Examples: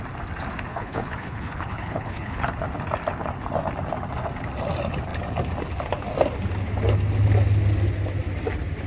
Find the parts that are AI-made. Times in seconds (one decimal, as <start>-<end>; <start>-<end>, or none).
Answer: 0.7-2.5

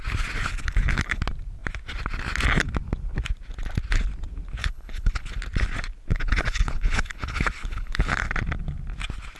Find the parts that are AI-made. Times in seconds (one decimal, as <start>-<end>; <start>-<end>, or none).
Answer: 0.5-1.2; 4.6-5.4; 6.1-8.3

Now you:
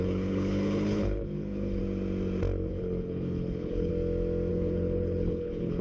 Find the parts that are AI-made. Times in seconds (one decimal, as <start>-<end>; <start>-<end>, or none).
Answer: 0.0-1.8; 2.7-3.9; 4.5-5.8

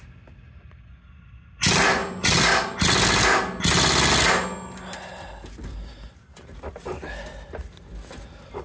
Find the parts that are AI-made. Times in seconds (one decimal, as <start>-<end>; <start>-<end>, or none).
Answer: none

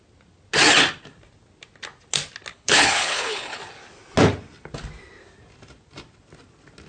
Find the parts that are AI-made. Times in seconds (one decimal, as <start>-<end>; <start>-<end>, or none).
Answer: 2.5-3.6

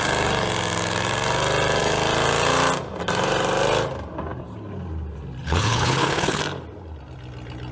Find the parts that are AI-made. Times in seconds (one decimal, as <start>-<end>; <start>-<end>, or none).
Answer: 5.4-6.4

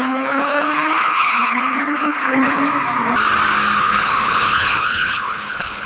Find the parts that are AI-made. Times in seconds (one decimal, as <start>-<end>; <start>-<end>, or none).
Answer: 0.0-2.6; 3.8-5.9

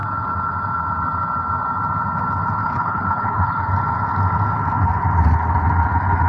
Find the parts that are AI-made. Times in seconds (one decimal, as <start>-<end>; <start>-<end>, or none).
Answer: 2.6-3.7